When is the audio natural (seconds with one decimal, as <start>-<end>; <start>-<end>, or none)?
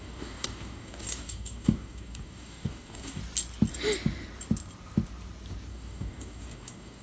3.2-5.7